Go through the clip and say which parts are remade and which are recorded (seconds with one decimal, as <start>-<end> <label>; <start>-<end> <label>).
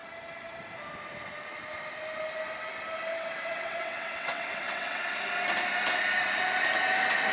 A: 0.0-3.1 recorded; 3.1-5.0 remade; 5.0-7.3 recorded